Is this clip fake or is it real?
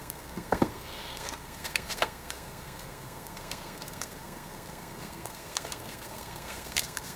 fake